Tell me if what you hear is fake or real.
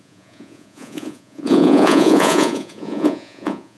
fake